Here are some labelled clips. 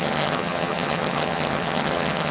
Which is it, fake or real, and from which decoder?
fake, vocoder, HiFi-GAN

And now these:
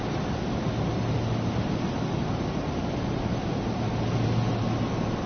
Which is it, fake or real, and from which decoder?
real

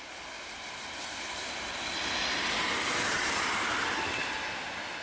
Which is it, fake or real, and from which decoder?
real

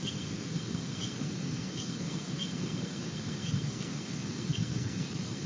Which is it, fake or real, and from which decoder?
fake, codec, SNAC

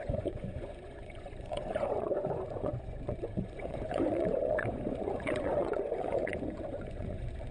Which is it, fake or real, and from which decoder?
fake, vocoder, Vocos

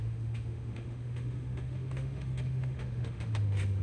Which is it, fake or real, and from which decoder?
fake, autoencoder, DAC-VAE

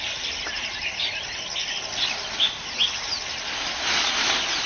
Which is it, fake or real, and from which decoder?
real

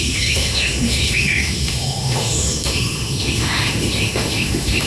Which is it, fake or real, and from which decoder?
fake, autoencoder, DAC-VAE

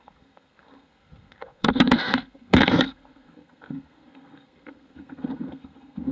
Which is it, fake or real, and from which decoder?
fake, codec, SNAC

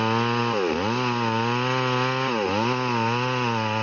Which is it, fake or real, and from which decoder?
real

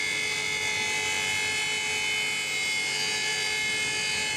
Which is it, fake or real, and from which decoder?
real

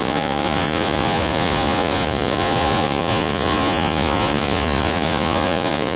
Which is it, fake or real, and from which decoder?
fake, vocoder, Vocos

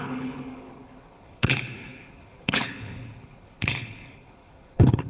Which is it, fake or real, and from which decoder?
fake, codec, HILCodec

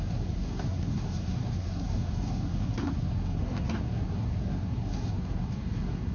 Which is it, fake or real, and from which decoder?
fake, codec, SNAC